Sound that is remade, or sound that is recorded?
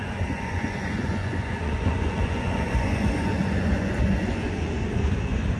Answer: remade